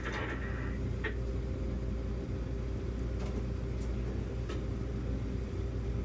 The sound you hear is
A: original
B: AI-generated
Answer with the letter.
A